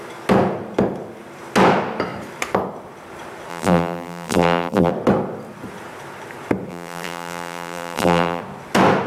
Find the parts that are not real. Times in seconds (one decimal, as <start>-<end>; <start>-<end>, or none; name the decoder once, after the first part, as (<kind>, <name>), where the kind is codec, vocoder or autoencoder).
3.5-4.9 (vocoder, BigVGAN v2); 6.7-8.4